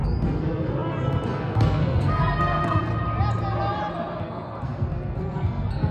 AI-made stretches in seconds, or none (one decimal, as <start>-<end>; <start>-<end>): 0.0-2.9; 4.2-5.9